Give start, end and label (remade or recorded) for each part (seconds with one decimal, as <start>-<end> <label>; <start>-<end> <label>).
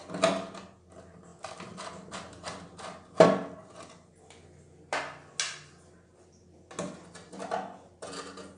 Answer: 0.0-8.6 recorded